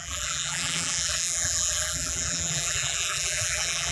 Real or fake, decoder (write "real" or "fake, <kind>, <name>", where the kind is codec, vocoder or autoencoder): fake, vocoder, BigVGAN v2